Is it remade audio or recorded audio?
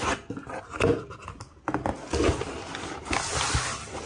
recorded